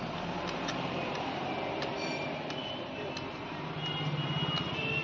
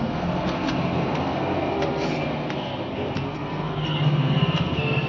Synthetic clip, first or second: second